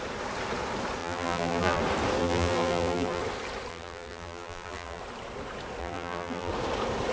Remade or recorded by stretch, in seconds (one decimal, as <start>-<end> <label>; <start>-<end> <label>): 0.0-1.0 recorded; 1.0-1.8 remade; 1.8-2.2 recorded; 2.2-3.2 remade; 3.2-3.7 recorded; 3.7-5.0 remade; 5.0-5.8 recorded; 5.8-6.5 remade; 6.5-7.1 recorded